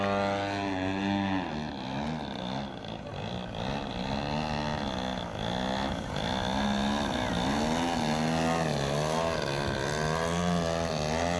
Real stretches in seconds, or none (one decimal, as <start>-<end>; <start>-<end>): 0.0-11.4